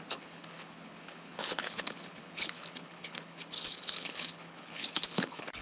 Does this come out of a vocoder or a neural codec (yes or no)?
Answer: yes